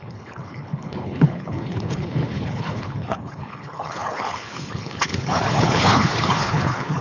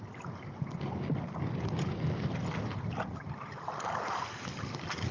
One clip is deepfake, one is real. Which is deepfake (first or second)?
first